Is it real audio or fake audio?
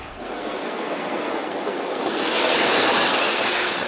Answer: fake